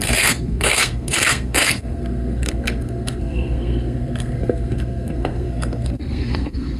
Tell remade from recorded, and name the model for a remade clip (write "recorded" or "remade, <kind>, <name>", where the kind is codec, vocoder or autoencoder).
remade, codec, SNAC